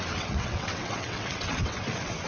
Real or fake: fake